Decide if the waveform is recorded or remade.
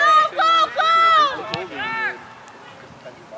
recorded